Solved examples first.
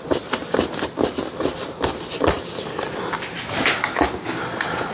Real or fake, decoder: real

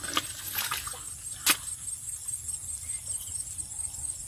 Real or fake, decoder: real